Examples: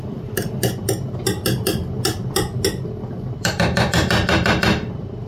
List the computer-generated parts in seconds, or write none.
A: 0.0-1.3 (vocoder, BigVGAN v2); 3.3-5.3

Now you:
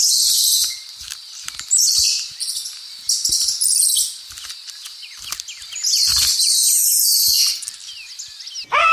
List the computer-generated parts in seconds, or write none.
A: 0.6-5.3 (vocoder, BigVGAN v2); 6.3-6.9

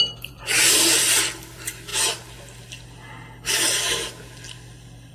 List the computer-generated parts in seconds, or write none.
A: 0.0-1.9 (vocoder, BigVGAN v2)

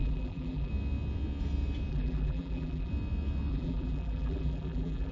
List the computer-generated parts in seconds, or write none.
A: 0.0-0.7 (vocoder, BigVGAN v2); 1.9-2.9; 3.5-5.1

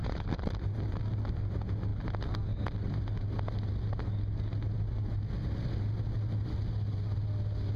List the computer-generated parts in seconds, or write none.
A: 0.0-0.5 (vocoder, BigVGAN v2)

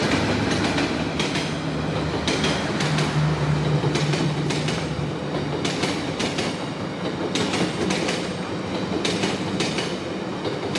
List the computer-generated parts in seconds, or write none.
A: 0.0-1.3 (vocoder, BigVGAN v2)

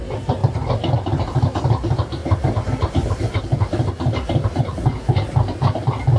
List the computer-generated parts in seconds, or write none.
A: none

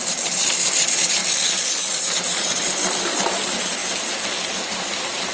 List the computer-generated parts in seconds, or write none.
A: 0.0-1.2 (vocoder, BigVGAN v2); 1.9-3.8; 4.7-5.3